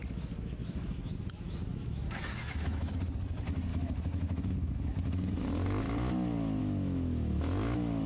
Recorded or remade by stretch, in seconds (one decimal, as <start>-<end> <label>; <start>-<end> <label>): 0.0-0.6 recorded; 0.6-2.9 remade; 2.9-3.7 recorded; 3.7-5.5 remade; 5.5-6.6 recorded; 6.6-8.1 remade